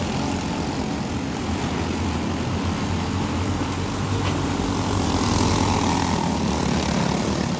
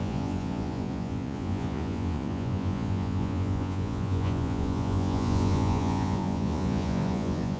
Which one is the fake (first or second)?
second